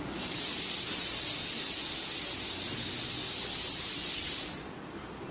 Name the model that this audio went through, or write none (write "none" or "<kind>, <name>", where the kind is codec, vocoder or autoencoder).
none